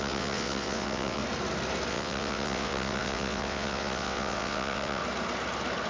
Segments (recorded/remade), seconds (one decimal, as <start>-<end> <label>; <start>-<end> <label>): 0.0-1.2 remade; 1.2-1.9 recorded; 1.9-5.0 remade; 5.0-5.9 recorded